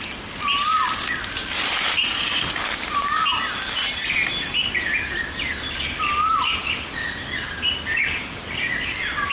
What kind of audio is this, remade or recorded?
recorded